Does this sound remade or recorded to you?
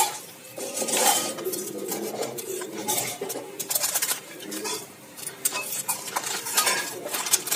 remade